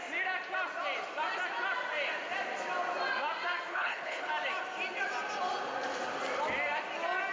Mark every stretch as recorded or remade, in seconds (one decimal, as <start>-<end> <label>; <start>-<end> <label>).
0.0-3.7 recorded; 3.7-4.3 remade; 4.3-7.3 recorded